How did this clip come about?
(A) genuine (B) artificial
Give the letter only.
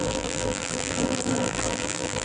B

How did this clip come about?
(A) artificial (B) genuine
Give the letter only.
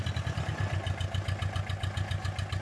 B